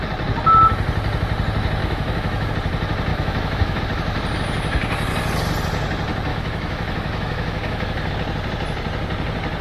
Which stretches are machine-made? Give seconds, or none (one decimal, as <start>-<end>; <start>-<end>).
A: 1.8-2.5; 3.1-3.8; 6.3-8.1

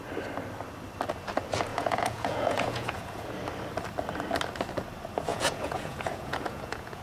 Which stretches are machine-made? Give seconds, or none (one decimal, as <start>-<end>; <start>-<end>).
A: 1.7-3.3; 5.3-7.0

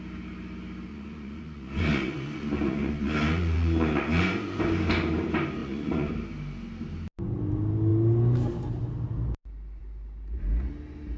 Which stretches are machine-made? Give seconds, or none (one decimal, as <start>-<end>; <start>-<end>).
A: 0.9-4.6; 5.6-6.1

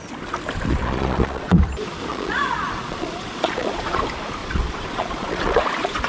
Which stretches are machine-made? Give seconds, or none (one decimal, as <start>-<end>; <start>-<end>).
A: 0.7-1.6; 2.1-4.0; 4.4-6.1